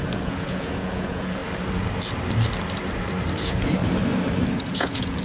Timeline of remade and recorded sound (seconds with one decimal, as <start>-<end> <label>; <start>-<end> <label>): 0.0-1.4 remade; 1.4-3.4 recorded; 3.4-3.8 remade; 3.8-4.7 recorded; 4.7-5.2 remade

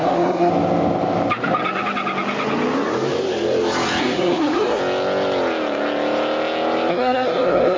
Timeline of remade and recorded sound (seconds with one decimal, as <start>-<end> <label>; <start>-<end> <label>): 0.0-0.5 remade; 0.5-4.0 recorded; 4.0-4.8 remade; 4.8-6.9 recorded; 6.9-7.8 remade

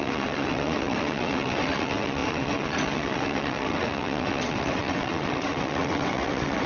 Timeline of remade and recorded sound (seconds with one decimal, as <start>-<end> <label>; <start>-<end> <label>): 0.0-6.7 remade

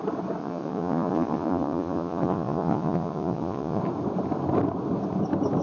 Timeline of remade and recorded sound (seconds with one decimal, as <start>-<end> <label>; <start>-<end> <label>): 0.0-0.4 recorded; 0.4-3.8 remade; 3.8-5.6 recorded

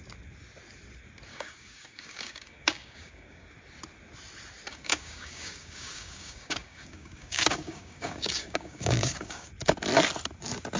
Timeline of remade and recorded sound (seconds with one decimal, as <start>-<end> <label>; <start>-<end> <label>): 0.0-1.3 recorded; 1.3-3.5 remade; 3.5-4.7 recorded; 4.7-9.5 remade; 9.5-10.8 recorded